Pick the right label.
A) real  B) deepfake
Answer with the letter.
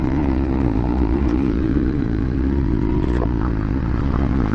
B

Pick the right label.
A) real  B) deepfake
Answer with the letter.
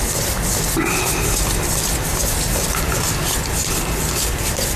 A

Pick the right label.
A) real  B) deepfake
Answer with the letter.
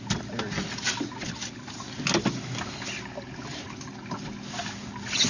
A